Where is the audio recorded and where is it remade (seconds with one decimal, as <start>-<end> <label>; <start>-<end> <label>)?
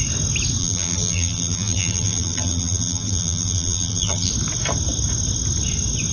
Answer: 0.0-0.6 recorded; 0.6-4.3 remade; 4.3-6.1 recorded